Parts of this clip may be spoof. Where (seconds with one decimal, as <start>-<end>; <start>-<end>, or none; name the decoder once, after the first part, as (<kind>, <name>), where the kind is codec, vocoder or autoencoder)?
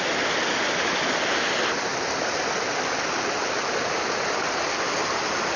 none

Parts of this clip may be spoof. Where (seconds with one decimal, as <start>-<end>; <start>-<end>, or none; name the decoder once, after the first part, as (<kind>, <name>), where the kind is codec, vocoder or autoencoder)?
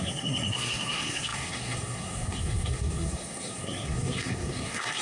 0.0-5.0 (codec, SNAC)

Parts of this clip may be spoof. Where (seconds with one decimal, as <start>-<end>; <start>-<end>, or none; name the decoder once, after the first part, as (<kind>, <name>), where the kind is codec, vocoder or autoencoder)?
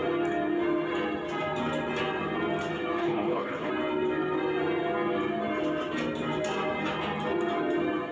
3.0-3.7 (codec, HILCodec)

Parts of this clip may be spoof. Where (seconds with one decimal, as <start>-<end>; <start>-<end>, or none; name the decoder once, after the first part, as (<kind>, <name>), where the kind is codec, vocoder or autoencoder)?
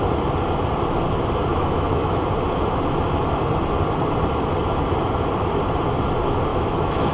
1.5-2.2 (autoencoder, DAC-VAE); 6.5-7.1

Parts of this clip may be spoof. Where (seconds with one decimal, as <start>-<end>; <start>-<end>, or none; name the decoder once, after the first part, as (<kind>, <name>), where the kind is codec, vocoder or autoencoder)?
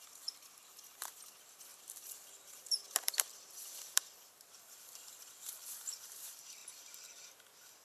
0.0-6.6 (vocoder, BigVGAN v2)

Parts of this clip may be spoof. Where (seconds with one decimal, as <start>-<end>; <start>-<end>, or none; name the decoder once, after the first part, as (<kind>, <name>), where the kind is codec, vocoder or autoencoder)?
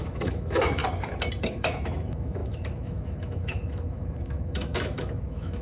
0.0-0.8 (autoencoder, DAC-VAE); 1.4-5.6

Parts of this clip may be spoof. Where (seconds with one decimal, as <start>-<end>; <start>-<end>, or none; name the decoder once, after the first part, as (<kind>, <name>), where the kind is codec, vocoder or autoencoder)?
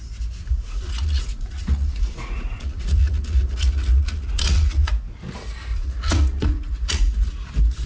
0.4-4.9 (vocoder, Vocos); 5.7-7.3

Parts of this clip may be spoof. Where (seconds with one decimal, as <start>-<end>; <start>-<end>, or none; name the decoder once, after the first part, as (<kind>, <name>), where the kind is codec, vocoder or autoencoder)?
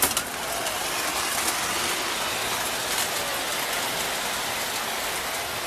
3.5-4.1 (vocoder, BigVGAN v2)